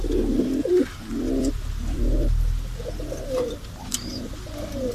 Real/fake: fake